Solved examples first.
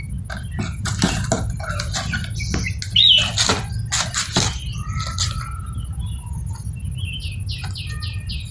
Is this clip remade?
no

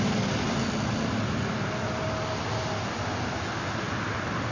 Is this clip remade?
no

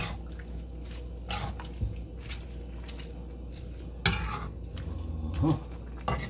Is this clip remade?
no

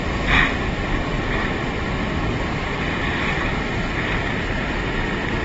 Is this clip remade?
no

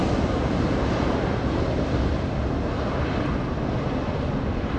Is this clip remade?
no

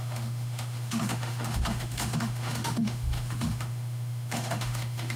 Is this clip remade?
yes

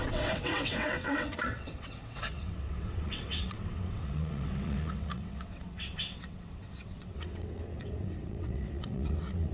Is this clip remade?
yes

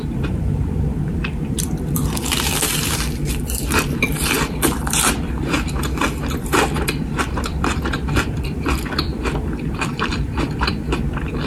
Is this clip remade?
yes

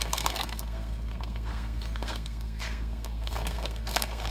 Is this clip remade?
yes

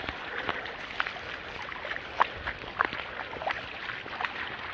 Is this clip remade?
no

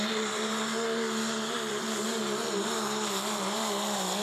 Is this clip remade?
yes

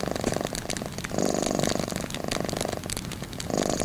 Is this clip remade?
no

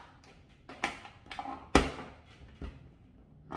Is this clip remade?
no